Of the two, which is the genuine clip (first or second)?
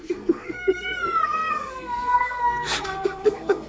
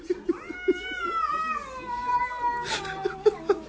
second